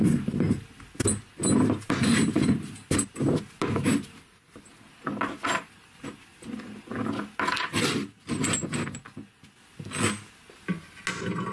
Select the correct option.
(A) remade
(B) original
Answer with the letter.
B